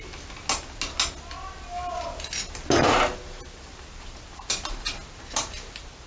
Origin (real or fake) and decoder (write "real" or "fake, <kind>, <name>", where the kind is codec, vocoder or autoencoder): real